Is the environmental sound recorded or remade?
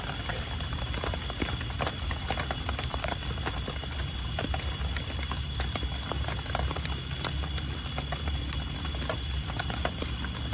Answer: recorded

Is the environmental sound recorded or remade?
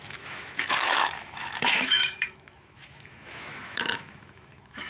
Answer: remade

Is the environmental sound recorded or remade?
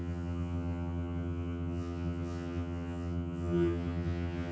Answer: remade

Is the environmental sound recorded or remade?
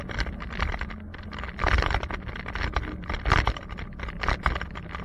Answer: recorded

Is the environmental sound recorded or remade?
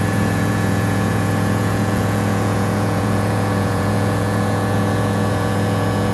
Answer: remade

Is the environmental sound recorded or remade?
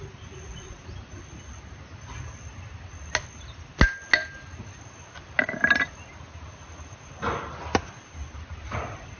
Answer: recorded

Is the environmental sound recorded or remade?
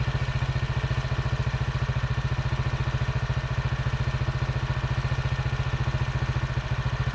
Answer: recorded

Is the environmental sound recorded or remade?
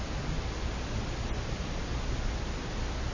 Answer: recorded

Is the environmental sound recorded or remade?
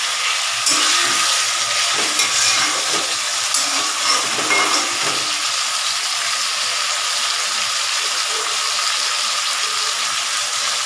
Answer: recorded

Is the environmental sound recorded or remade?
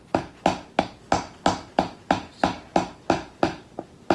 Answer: recorded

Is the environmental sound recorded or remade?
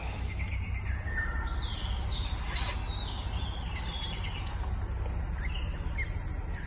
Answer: recorded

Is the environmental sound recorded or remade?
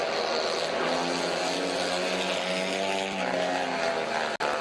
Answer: recorded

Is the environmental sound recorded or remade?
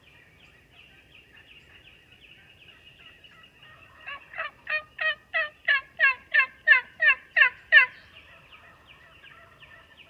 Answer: recorded